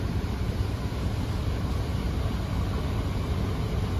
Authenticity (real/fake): real